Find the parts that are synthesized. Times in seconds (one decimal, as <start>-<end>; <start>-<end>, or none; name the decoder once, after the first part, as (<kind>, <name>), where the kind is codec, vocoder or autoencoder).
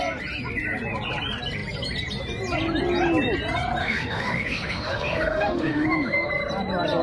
3.8-6.3 (autoencoder, DAC-VAE)